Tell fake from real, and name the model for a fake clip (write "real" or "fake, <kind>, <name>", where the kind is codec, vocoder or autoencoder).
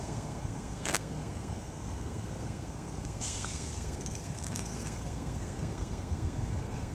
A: fake, codec, SNAC